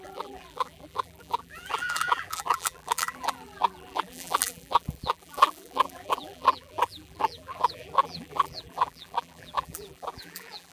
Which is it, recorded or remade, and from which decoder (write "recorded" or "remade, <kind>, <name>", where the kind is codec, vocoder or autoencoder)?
remade, vocoder, BigVGAN v2